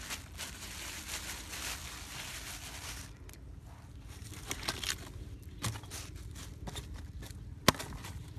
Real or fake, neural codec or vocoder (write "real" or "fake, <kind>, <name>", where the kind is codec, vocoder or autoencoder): real